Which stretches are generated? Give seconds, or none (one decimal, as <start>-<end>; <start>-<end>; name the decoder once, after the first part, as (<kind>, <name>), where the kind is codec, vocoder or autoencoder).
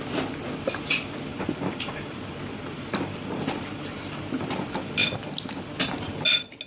1.3-4.3 (vocoder, BigVGAN v2)